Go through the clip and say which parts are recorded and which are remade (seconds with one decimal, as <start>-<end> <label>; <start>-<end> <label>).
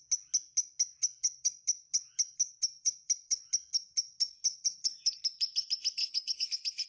0.0-6.0 recorded; 6.0-6.5 remade; 6.5-6.9 recorded